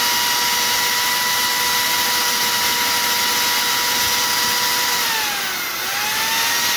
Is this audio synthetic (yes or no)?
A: no